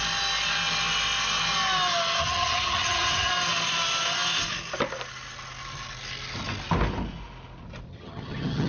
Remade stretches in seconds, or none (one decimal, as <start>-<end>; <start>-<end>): 2.2-3.3; 7.9-8.7